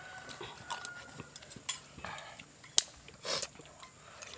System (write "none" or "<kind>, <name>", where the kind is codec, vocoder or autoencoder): none